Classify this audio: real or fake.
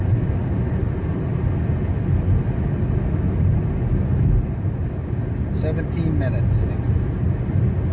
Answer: real